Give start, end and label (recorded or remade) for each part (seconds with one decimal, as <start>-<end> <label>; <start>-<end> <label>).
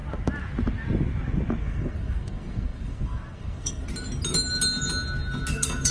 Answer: 0.0-1.6 recorded; 1.6-3.9 remade; 3.9-5.5 recorded; 5.5-5.9 remade